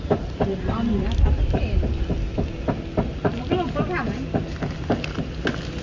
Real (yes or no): yes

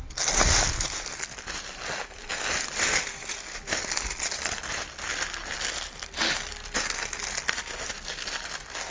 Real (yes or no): yes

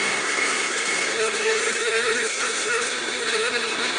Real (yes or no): no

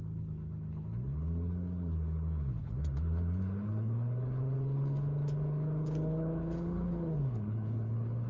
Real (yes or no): no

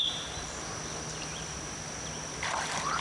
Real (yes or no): yes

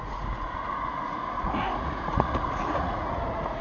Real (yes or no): no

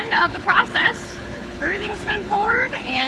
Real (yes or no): no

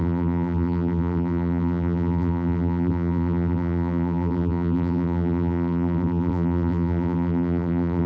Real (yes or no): no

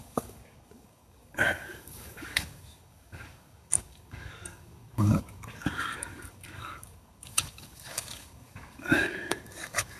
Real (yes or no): no